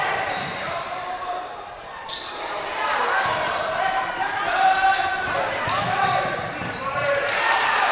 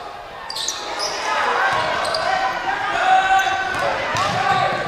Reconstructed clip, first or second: first